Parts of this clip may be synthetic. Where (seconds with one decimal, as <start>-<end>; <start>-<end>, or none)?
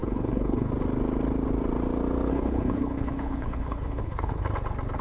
0.0-0.7; 2.3-4.4